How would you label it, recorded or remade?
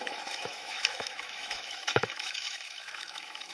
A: remade